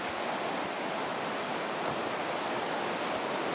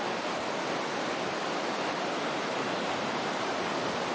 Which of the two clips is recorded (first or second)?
first